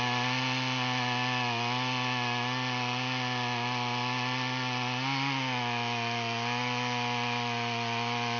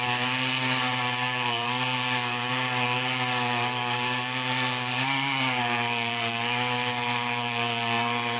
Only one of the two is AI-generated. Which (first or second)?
second